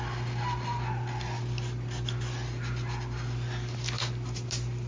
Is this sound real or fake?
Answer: real